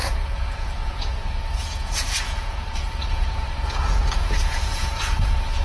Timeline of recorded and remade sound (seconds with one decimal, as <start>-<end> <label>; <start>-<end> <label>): 0.0-5.6 remade